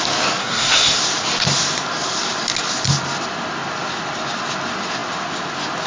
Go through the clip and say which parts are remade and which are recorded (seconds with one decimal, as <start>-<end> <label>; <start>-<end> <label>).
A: 0.0-0.4 recorded; 0.4-1.0 remade; 1.0-5.9 recorded